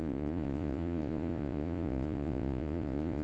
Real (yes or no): no